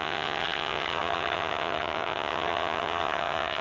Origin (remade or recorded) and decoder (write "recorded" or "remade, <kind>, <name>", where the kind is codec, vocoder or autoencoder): remade, vocoder, HiFi-GAN